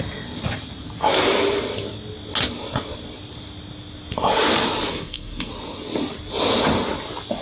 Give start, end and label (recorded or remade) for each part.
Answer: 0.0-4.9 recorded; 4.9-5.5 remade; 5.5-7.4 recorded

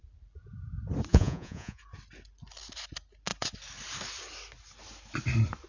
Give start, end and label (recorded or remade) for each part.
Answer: 0.0-1.1 recorded; 1.1-1.8 remade; 1.8-5.7 recorded

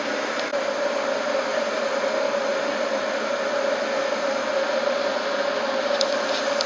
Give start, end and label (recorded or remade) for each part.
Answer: 0.0-6.7 recorded

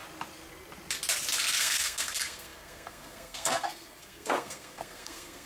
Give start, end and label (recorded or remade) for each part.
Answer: 0.0-1.4 recorded; 1.4-5.5 remade